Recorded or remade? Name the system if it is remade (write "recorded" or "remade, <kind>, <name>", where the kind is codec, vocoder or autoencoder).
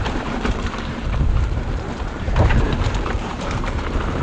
remade, vocoder, BigVGAN v2